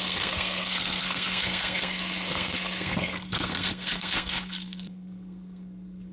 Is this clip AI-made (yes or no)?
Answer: yes